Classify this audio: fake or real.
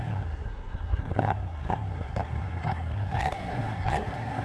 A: fake